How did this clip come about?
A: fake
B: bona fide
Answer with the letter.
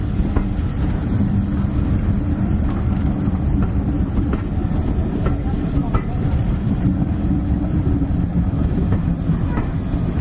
B